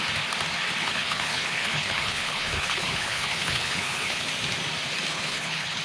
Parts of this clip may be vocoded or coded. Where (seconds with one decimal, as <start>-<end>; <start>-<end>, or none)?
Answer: 0.8-4.3; 5.1-5.8